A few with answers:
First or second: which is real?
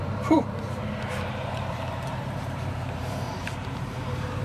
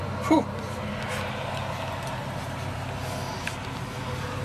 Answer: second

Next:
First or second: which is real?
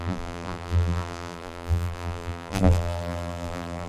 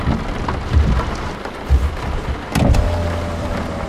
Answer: second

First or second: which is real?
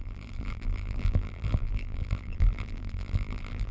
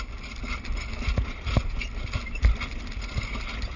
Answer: second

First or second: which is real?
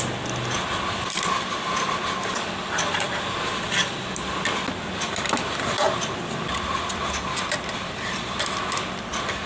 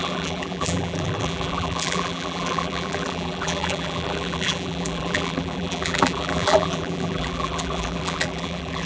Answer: first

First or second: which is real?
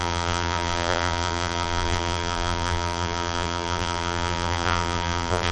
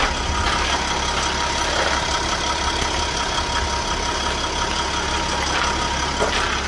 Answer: second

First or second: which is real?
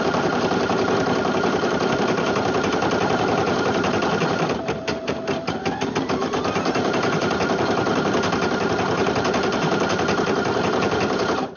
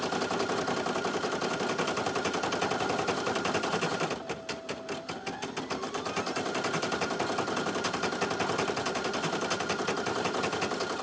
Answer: second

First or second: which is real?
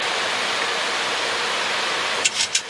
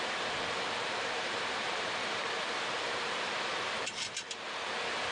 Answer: first